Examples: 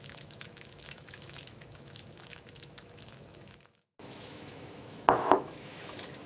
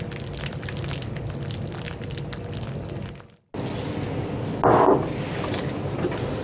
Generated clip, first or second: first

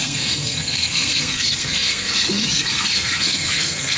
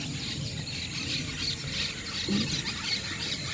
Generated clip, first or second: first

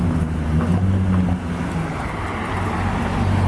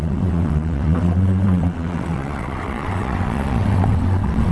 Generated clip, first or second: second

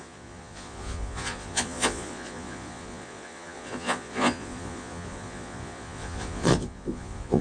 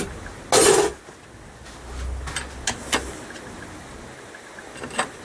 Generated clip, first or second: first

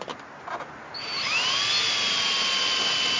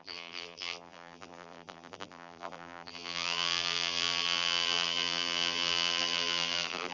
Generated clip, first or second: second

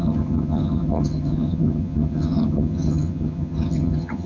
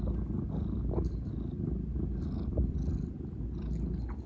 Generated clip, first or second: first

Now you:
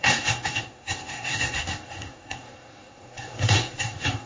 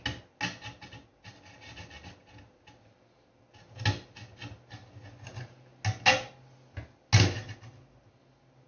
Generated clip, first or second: first